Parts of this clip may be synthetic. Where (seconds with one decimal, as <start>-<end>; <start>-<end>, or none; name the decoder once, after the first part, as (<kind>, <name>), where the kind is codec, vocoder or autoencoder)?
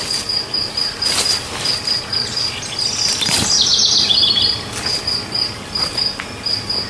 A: none